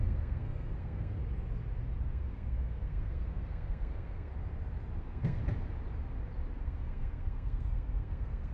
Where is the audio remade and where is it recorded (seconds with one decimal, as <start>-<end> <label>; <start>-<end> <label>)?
0.0-1.2 remade; 1.2-2.0 recorded; 2.0-4.3 remade; 4.3-5.0 recorded; 5.0-5.4 remade; 5.4-6.6 recorded; 6.6-8.5 remade